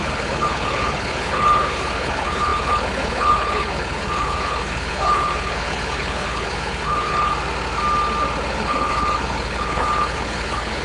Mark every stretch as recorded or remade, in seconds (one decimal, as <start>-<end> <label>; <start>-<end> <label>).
0.0-7.3 remade; 7.3-8.5 recorded; 8.5-10.8 remade